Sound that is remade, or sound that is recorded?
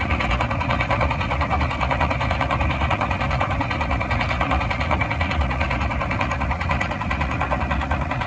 remade